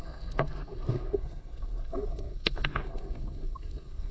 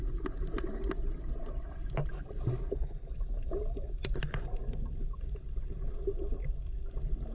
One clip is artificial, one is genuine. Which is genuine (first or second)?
second